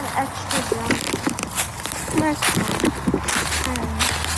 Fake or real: real